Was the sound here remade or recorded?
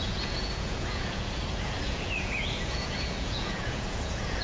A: remade